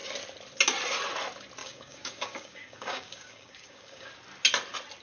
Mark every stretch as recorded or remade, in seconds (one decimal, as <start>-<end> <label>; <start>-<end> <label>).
0.0-1.6 recorded; 1.6-4.1 remade; 4.1-5.0 recorded